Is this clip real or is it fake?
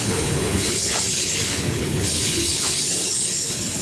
fake